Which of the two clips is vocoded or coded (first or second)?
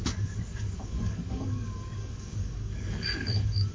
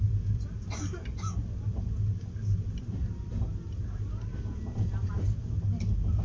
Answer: first